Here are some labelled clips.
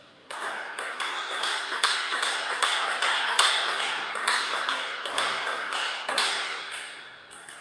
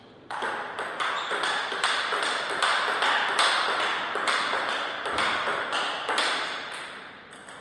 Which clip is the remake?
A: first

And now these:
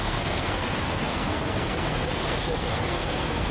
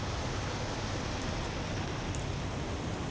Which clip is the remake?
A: first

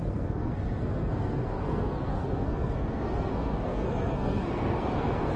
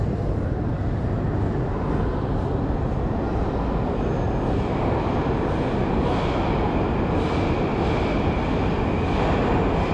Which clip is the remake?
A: first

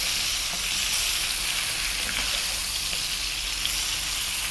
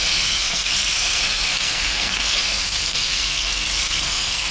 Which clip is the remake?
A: second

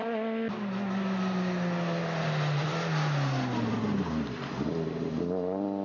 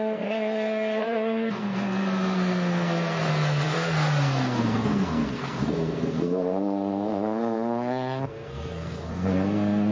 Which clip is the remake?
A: second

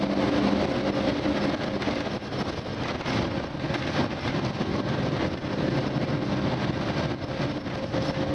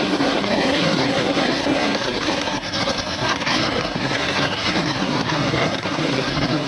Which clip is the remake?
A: second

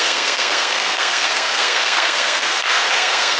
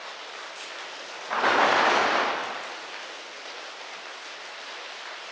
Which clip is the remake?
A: first